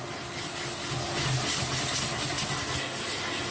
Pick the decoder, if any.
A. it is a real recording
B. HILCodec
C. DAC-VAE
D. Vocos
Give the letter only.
A